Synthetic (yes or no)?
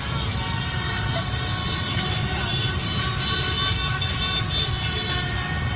no